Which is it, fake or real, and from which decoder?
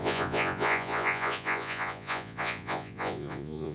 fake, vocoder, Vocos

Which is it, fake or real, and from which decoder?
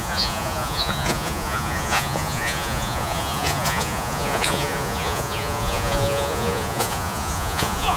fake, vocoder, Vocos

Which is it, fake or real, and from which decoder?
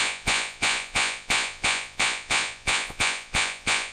fake, vocoder, Vocos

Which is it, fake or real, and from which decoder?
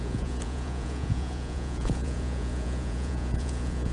fake, vocoder, Vocos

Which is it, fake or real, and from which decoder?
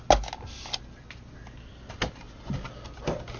real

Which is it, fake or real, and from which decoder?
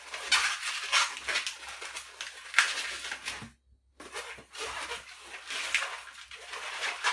real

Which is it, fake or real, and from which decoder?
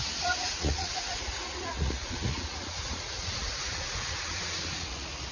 fake, vocoder, Vocos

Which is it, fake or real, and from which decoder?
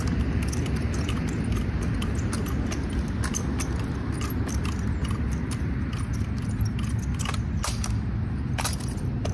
real